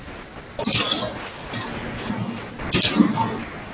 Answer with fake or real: real